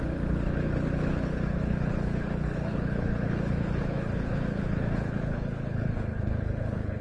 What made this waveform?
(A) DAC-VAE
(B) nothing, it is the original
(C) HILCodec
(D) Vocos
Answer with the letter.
C